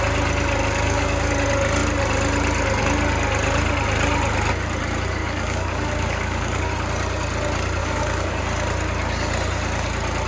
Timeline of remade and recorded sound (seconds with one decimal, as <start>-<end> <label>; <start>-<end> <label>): 0.0-0.6 recorded; 0.6-1.3 remade; 1.3-5.2 recorded; 5.2-6.7 remade; 6.7-7.8 recorded; 7.8-8.4 remade; 8.4-10.3 recorded